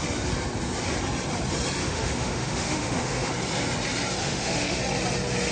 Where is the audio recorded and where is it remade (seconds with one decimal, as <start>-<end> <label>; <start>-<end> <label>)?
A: 0.0-1.8 recorded; 1.8-3.3 remade; 3.3-4.2 recorded; 4.2-4.8 remade; 4.8-5.5 recorded